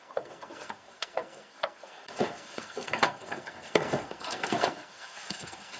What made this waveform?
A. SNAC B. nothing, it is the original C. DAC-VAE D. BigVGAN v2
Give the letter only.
A